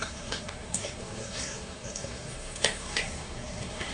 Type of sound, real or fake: fake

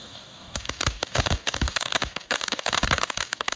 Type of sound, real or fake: fake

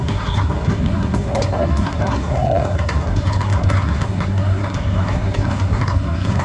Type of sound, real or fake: fake